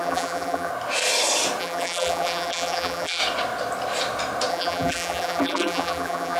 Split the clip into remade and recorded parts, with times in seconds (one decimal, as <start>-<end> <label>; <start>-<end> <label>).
0.0-0.7 remade; 0.7-1.6 recorded; 1.6-3.2 remade; 3.2-4.5 recorded; 4.5-6.4 remade